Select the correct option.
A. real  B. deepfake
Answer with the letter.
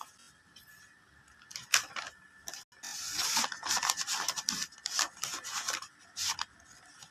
A